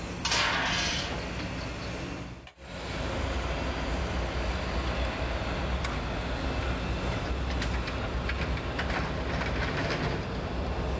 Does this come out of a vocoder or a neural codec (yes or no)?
no